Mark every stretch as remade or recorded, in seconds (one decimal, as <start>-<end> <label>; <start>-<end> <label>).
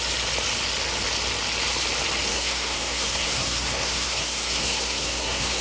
0.0-2.3 recorded; 2.3-5.6 remade